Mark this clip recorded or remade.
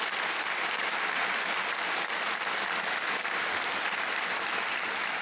recorded